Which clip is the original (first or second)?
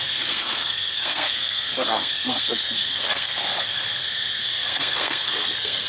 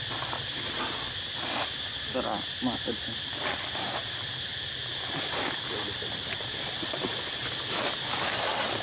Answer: second